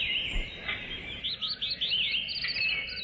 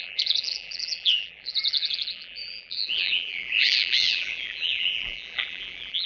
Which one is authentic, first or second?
first